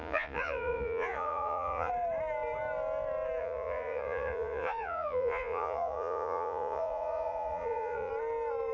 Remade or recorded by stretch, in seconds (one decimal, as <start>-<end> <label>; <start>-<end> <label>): 0.0-1.9 remade; 1.9-3.4 recorded; 3.4-8.1 remade; 8.1-8.7 recorded